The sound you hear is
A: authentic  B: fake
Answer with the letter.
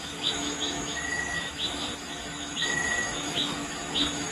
B